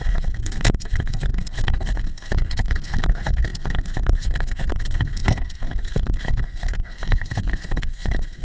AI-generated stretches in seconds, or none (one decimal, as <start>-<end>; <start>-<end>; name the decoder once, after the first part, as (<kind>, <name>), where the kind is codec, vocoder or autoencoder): 0.0-8.4 (codec, SNAC)